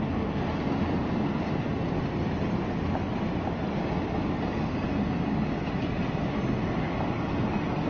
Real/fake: real